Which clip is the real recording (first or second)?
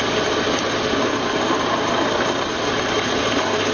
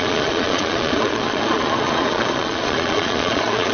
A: first